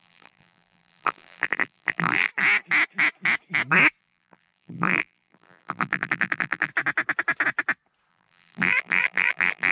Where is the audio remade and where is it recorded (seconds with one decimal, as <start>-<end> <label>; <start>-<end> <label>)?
0.0-2.3 remade; 2.3-4.0 recorded; 4.0-6.7 remade; 6.7-8.1 recorded; 8.1-9.7 remade